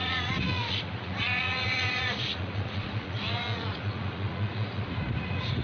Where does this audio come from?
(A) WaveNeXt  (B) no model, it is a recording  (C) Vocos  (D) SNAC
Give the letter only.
C